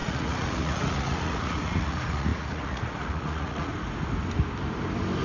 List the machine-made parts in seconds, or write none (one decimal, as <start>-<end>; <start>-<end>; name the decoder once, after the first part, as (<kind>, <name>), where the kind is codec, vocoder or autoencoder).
0.0-3.7 (vocoder, Vocos)